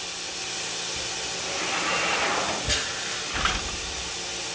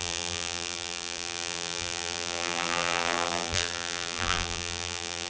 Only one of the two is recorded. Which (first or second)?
first